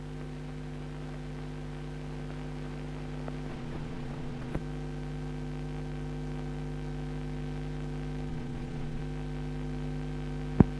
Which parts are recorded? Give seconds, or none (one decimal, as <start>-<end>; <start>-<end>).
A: 0.0-3.5; 4.6-8.3; 9.0-10.8